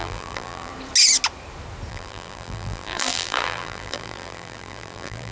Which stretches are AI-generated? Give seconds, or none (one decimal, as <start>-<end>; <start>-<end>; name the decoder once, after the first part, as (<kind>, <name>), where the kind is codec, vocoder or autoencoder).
0.0-0.7 (vocoder, BigVGAN v2); 1.9-5.3